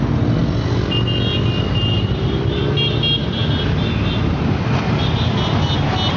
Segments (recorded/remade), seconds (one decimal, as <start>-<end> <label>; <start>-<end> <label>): 0.0-6.2 recorded